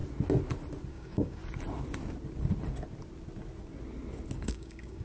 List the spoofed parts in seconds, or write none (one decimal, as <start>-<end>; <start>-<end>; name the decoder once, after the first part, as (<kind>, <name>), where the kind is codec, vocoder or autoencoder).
0.9-1.4 (codec, DAC); 4.4-5.0